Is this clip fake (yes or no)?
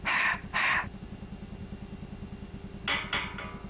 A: no